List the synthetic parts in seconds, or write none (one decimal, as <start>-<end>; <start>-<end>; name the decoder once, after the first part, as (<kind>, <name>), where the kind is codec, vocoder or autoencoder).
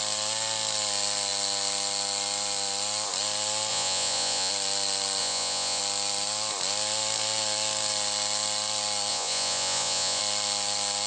3.7-4.5 (vocoder, Vocos); 5.2-5.8; 9.1-10.2